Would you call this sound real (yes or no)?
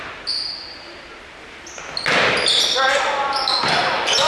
yes